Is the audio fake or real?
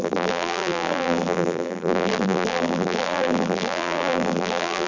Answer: fake